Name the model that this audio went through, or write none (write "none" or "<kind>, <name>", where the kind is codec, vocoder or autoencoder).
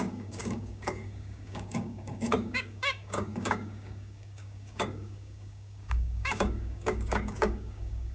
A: codec, DAC